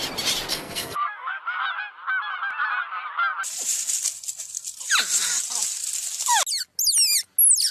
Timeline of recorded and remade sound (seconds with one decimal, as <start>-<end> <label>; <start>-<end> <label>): 0.0-0.5 recorded; 0.5-1.4 remade; 1.4-7.7 recorded